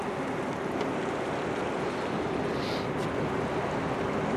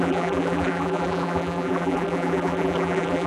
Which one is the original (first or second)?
first